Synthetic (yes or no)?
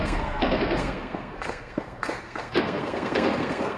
yes